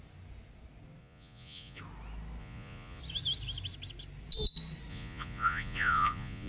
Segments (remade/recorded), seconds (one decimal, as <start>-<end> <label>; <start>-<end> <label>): 0.0-1.0 recorded; 1.0-1.8 remade; 1.8-2.4 recorded; 2.4-3.0 remade; 3.0-4.9 recorded; 4.9-6.5 remade